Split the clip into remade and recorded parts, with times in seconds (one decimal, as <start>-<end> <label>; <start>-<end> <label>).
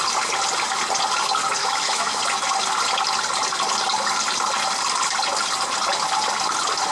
0.0-1.6 recorded; 1.6-2.2 remade; 2.2-6.9 recorded